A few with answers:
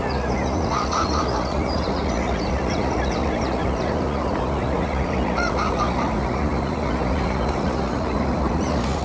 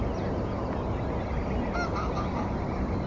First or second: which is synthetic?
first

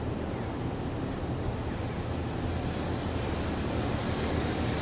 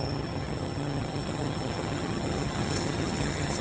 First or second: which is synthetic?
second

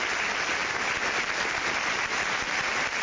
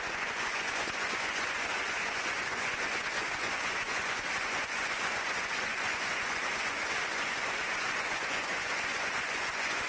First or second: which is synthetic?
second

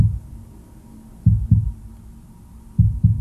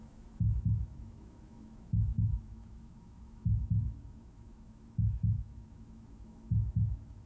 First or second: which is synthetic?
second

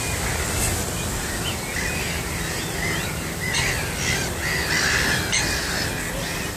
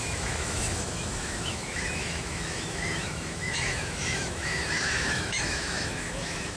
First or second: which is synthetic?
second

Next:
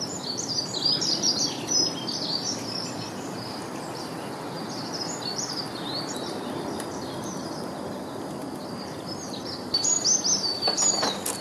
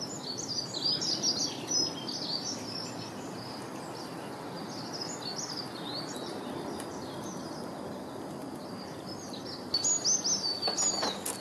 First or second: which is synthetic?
first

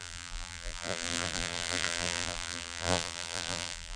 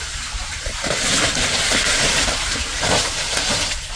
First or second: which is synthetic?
first